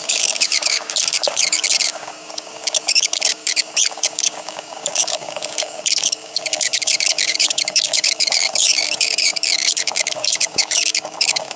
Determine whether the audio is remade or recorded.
remade